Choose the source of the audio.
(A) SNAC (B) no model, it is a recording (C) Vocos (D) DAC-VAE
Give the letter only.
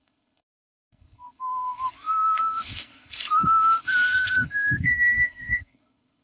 A